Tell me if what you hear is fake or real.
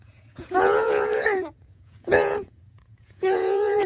fake